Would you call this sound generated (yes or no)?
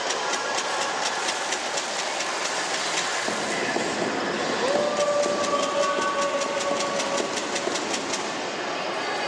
no